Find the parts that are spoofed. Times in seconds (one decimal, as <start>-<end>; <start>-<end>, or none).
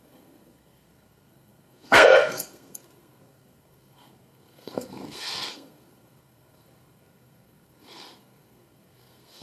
0.0-9.4